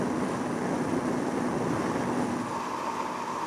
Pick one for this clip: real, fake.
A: real